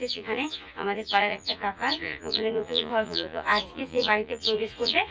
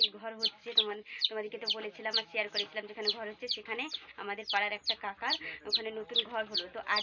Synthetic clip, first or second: first